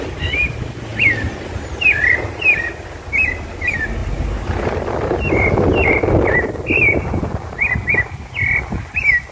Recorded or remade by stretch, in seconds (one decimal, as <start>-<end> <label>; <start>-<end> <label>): 0.0-9.3 recorded